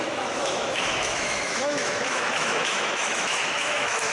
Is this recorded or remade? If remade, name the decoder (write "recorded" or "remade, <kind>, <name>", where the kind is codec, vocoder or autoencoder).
remade, autoencoder, DAC-VAE